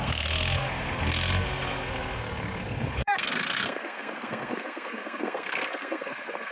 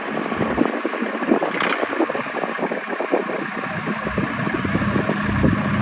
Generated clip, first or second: first